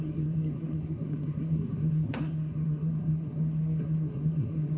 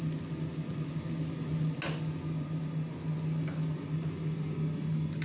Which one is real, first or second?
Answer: second